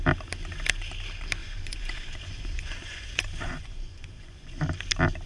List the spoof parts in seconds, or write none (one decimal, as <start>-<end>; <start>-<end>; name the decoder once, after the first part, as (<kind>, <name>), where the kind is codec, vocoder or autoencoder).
1.4-4.6 (vocoder, Vocos)